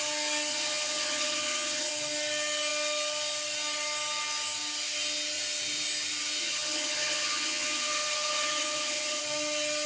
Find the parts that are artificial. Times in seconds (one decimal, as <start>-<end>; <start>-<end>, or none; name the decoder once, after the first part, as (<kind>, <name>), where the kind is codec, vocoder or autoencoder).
0.5-1.9 (vocoder, HiFi-GAN); 6.4-9.2